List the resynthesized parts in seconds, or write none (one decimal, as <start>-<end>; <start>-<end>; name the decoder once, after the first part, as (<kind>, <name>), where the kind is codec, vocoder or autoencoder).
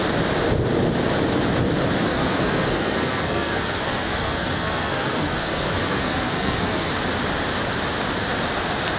2.1-6.9 (codec, SNAC)